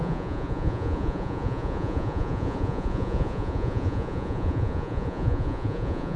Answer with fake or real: fake